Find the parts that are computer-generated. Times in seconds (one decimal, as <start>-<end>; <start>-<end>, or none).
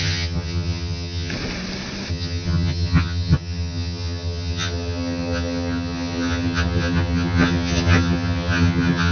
0.0-1.3; 2.1-9.1